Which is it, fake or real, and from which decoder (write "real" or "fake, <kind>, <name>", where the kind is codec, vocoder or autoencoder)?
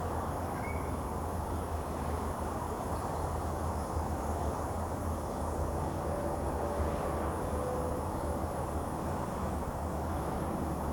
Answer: fake, codec, DAC